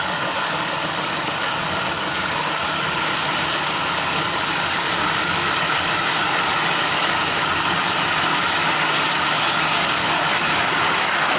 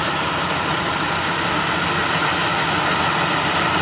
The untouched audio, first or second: second